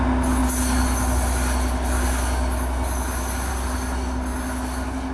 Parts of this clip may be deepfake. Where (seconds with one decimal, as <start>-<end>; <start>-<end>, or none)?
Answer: none